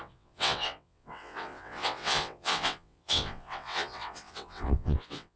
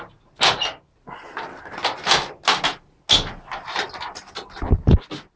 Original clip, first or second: second